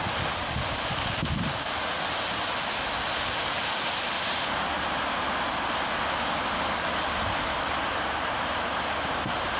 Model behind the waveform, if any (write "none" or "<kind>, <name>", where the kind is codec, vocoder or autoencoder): none